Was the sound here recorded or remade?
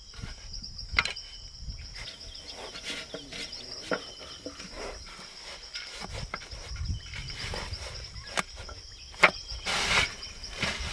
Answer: recorded